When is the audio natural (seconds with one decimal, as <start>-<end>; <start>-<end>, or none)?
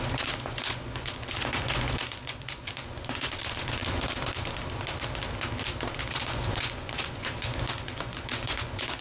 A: 3.8-6.0